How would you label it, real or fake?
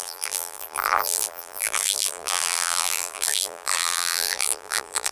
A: fake